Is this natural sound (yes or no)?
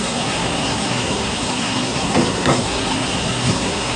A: no